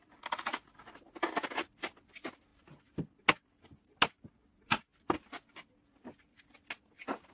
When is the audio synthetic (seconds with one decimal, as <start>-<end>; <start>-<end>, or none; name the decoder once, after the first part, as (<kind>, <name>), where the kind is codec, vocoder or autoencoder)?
none